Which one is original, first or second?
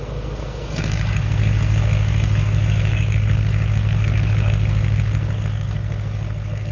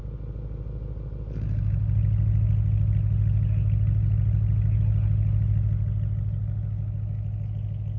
second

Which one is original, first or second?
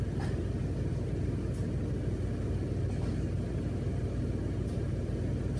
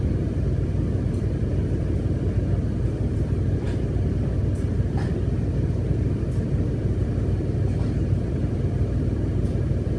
first